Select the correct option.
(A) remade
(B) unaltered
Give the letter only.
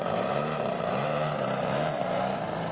A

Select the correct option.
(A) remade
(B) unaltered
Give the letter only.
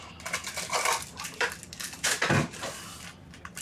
B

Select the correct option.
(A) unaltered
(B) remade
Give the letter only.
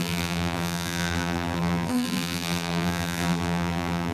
B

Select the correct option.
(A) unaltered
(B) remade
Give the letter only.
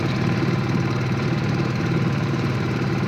B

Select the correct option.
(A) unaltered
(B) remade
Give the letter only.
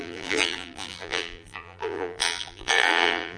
B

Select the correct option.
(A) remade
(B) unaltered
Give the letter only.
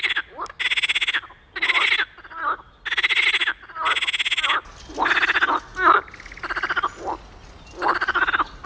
B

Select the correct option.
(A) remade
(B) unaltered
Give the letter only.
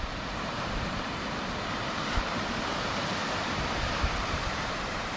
A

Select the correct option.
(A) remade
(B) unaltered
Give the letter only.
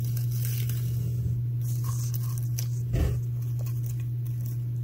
B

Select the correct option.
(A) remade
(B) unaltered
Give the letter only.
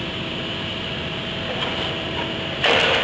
A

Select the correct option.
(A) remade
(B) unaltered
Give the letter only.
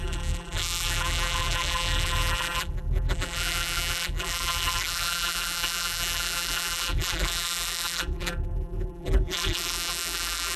A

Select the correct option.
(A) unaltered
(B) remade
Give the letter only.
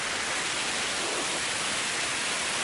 A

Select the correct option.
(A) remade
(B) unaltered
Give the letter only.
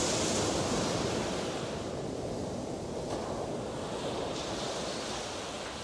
A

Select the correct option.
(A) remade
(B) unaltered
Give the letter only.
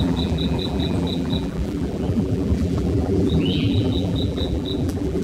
A